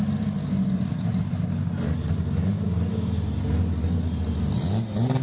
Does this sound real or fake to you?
real